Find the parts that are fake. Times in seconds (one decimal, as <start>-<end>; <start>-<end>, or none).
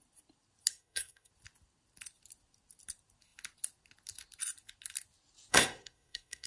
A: 0.7-1.3; 5.5-6.5